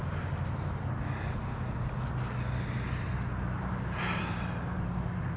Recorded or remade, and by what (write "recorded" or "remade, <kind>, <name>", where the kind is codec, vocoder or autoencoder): recorded